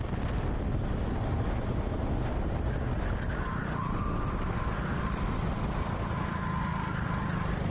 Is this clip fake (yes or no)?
no